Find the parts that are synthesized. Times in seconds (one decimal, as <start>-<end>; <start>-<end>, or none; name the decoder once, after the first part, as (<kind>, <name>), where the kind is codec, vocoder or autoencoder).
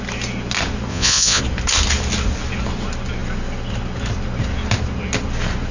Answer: 0.9-1.4 (vocoder, Vocos)